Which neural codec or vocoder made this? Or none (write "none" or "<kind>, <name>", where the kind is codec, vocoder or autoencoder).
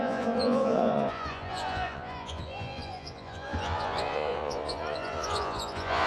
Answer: vocoder, Vocos